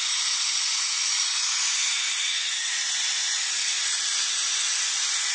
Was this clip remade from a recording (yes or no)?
yes